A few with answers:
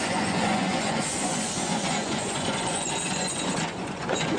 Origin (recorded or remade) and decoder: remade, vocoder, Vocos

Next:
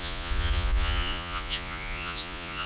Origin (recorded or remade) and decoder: remade, vocoder, Vocos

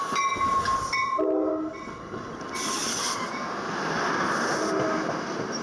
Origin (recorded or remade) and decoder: recorded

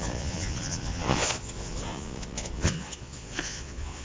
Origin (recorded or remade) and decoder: remade, vocoder, Vocos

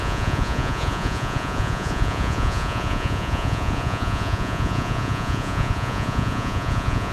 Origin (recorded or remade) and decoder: remade, vocoder, Vocos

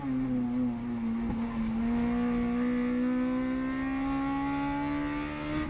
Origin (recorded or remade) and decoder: recorded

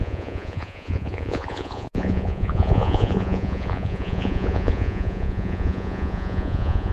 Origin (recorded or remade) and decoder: remade, vocoder, Vocos